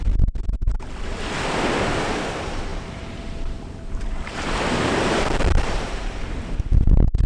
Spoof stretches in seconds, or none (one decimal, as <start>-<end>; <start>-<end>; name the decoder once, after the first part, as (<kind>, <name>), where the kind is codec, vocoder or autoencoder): 2.7-7.3 (vocoder, BigVGAN v2)